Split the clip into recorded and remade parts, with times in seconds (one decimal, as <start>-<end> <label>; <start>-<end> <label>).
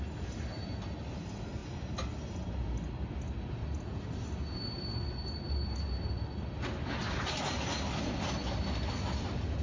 0.0-9.6 recorded